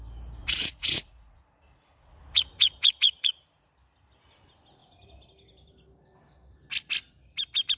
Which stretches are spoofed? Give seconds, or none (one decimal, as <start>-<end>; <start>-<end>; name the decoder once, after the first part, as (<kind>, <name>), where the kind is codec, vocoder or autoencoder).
0.4-3.7 (vocoder, Vocos)